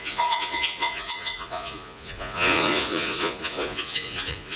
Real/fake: fake